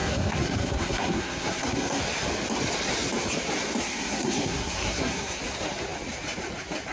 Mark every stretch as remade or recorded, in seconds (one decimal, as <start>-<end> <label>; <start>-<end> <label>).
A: 0.0-2.0 remade; 2.0-3.8 recorded; 3.8-5.4 remade; 5.4-6.9 recorded